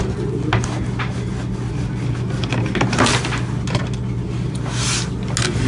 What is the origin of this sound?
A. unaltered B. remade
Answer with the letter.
A